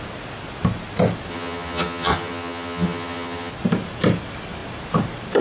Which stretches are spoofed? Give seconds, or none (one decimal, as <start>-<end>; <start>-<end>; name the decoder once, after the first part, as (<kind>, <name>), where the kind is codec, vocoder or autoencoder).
1.3-3.5 (vocoder, HiFi-GAN)